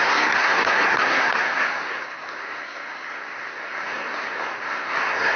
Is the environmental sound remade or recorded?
remade